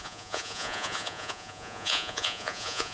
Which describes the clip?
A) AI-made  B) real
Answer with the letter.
A